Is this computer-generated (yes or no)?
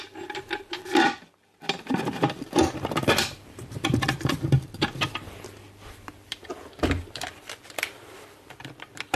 yes